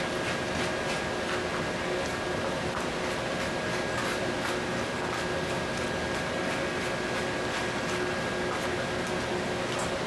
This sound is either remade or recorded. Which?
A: recorded